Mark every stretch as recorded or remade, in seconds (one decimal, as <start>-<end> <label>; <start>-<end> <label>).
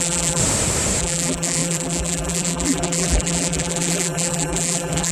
0.0-0.4 remade; 0.4-1.0 recorded; 1.0-5.1 remade